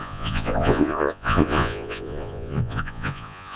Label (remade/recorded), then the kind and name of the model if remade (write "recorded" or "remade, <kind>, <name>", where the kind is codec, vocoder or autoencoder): remade, vocoder, Vocos